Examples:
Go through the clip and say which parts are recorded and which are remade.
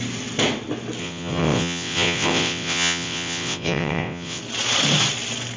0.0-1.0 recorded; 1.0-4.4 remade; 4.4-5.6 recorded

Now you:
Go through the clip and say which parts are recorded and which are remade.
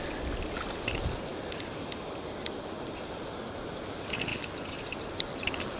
0.0-5.8 recorded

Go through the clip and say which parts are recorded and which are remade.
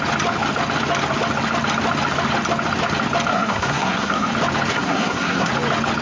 0.0-3.3 recorded; 3.3-4.3 remade; 4.3-4.7 recorded; 4.7-5.5 remade; 5.5-6.0 recorded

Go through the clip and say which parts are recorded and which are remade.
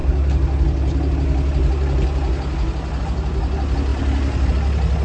0.0-3.9 recorded; 3.9-4.5 remade; 4.5-5.0 recorded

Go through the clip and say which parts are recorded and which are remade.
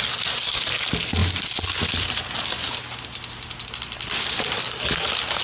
0.0-5.4 recorded